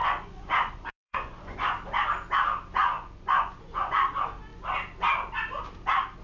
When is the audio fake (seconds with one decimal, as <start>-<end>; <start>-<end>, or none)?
0.0-1.7; 2.8-4.1